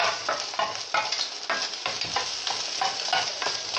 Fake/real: real